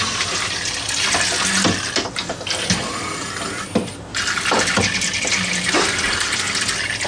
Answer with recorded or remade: recorded